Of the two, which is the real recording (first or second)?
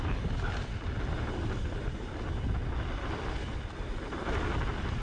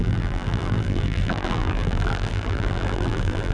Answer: first